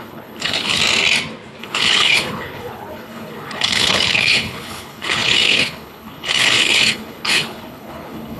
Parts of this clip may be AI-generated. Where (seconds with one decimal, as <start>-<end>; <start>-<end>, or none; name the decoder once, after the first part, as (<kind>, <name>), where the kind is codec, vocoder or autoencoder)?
0.0-0.8 (codec, HILCodec); 1.6-8.4

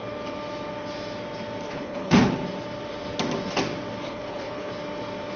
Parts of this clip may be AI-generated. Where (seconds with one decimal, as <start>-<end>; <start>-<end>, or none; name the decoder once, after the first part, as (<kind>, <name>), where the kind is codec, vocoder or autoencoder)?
1.7-2.3 (codec, HILCodec); 4.0-4.7

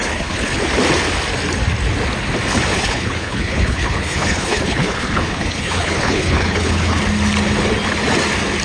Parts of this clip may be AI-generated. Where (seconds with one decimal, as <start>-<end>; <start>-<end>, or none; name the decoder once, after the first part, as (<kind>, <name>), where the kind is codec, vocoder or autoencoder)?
0.0-0.6 (codec, HILCodec); 2.7-7.0

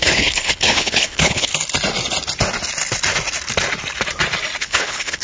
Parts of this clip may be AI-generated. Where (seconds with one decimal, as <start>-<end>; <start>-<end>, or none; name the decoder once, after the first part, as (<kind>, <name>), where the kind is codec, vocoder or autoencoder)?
0.0-1.5 (codec, HILCodec); 4.6-5.2

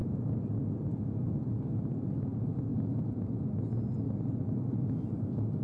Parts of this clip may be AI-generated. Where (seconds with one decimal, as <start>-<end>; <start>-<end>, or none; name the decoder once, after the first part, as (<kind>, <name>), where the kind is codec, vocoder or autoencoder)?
none

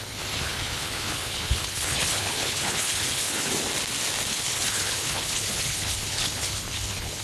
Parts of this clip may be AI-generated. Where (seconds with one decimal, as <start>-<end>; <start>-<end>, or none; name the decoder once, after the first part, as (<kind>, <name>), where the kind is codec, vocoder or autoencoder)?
0.0-3.5 (codec, HILCodec); 4.3-7.2

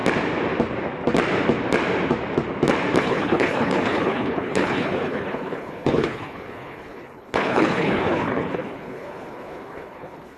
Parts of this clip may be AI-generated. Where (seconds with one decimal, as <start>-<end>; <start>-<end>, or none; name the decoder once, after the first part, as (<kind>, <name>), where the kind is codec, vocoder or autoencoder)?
3.0-10.4 (codec, HILCodec)

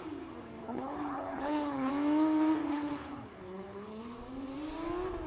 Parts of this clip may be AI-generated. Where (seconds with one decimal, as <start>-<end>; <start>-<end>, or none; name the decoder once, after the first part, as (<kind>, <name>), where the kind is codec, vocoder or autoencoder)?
0.6-1.9 (codec, HILCodec); 2.6-4.0